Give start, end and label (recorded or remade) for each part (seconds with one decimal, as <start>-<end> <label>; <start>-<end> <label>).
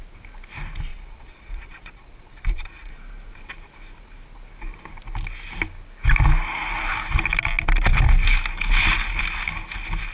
0.0-0.9 recorded; 0.9-2.9 remade; 2.9-10.1 recorded